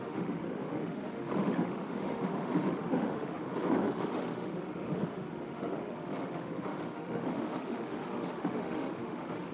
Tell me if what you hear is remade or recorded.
remade